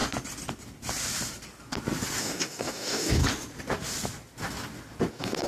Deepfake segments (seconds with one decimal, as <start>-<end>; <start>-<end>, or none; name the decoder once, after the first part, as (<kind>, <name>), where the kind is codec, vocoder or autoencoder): 2.2-3.2 (codec, DAC); 5.1-5.5